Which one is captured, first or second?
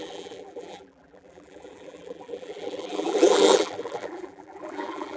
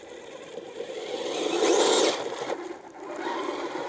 second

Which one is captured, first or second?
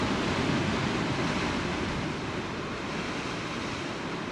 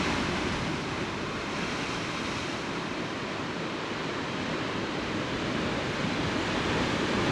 first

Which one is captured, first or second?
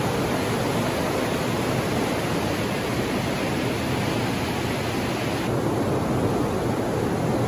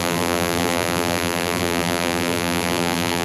first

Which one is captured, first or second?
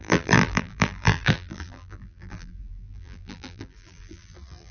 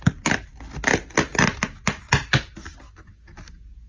second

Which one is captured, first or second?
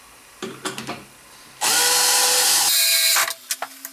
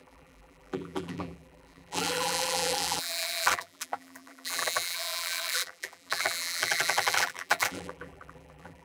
first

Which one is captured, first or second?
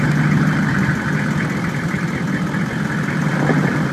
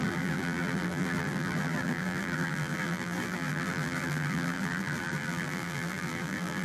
first